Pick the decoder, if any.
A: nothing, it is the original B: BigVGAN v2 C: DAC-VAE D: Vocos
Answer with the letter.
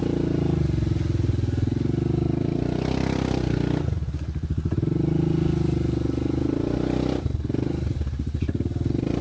A